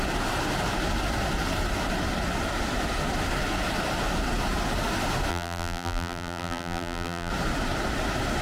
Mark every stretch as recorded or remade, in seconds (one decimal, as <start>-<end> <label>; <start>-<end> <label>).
0.0-5.3 recorded; 5.3-7.3 remade; 7.3-8.4 recorded